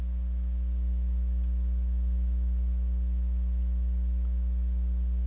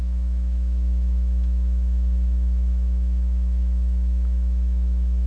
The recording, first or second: first